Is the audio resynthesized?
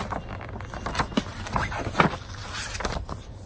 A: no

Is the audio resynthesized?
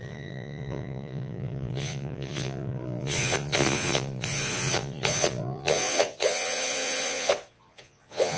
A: yes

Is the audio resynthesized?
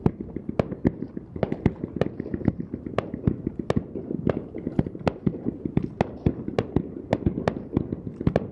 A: no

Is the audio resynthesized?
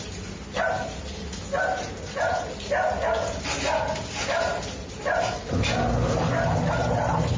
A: no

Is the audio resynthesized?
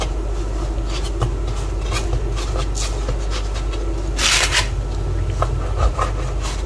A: no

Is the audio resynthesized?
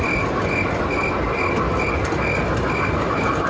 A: no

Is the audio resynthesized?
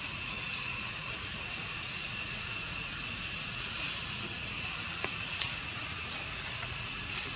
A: yes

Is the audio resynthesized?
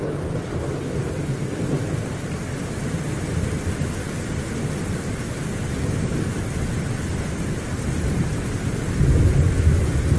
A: no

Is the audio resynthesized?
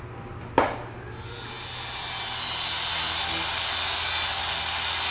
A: no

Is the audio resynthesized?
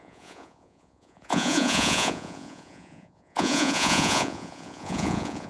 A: yes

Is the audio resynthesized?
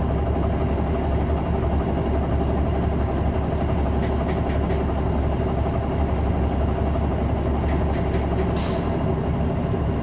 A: no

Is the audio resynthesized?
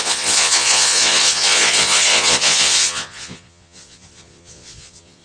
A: yes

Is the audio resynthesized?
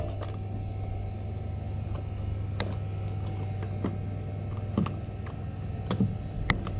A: no